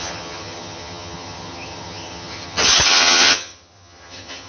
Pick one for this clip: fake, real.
fake